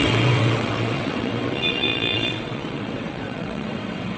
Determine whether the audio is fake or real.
fake